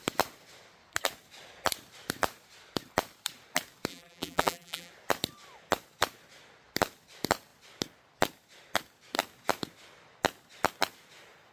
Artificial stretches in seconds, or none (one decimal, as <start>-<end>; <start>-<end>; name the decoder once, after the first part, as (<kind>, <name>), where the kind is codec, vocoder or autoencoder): 3.9-4.9 (vocoder, BigVGAN v2)